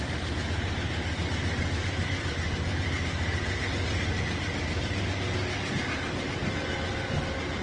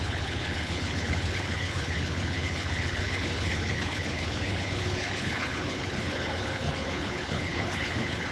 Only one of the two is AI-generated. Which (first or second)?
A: second